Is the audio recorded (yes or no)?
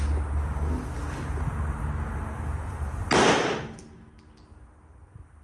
yes